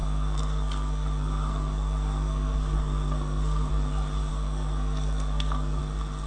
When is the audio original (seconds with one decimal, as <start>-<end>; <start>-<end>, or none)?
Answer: 3.7-4.3; 5.8-6.3